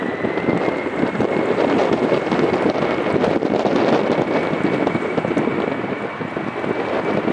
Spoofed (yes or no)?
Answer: no